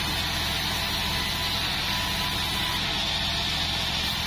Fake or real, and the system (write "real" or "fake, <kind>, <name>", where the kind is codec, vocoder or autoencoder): real